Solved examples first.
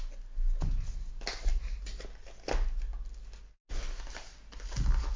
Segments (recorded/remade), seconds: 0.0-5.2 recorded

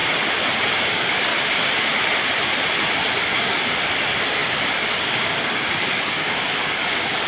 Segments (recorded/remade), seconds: 0.0-0.7 recorded; 0.7-1.3 remade; 1.3-3.2 recorded; 3.2-7.3 remade

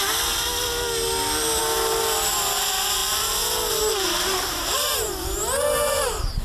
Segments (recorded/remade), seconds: 0.0-6.4 recorded

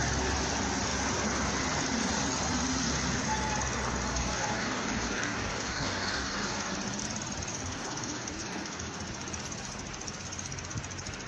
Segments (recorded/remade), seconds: 0.0-4.1 recorded; 4.1-6.7 remade; 6.7-7.5 recorded; 7.5-9.0 remade; 9.0-11.3 recorded

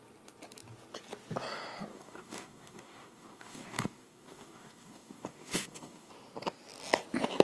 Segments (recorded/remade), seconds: 0.0-1.9 recorded; 1.9-6.1 remade; 6.1-7.4 recorded

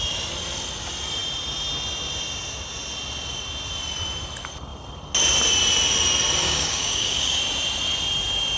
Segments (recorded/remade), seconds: 0.0-6.4 recorded; 6.4-7.4 remade; 7.4-8.6 recorded